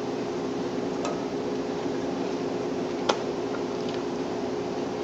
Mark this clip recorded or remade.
remade